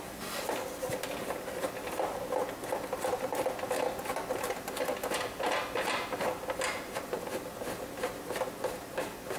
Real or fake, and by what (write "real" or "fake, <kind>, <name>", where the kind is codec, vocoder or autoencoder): real